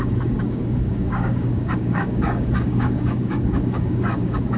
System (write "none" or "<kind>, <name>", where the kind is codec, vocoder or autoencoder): codec, DAC